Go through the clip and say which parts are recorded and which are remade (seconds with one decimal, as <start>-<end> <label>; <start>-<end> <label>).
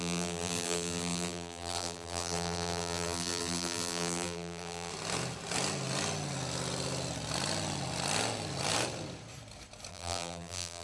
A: 0.0-4.9 remade; 4.9-9.9 recorded; 9.9-10.8 remade